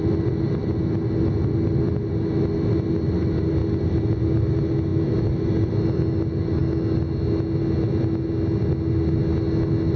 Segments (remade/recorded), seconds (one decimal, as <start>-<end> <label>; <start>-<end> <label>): 0.0-10.0 recorded

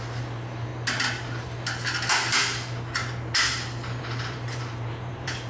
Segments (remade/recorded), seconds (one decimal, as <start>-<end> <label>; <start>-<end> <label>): 0.0-0.7 remade; 0.7-4.0 recorded; 4.0-5.5 remade

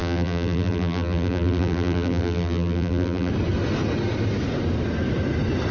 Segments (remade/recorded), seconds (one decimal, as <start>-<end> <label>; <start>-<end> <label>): 0.0-3.3 remade; 3.3-5.7 recorded

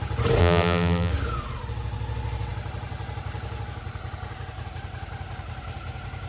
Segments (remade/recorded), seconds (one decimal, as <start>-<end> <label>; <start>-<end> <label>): 0.0-0.4 recorded; 0.4-1.1 remade; 1.1-6.3 recorded

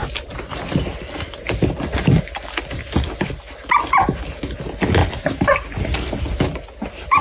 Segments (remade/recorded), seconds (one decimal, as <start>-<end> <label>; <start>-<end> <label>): 0.0-5.0 recorded; 5.0-6.2 remade; 6.2-7.2 recorded